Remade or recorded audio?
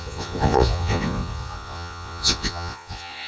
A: remade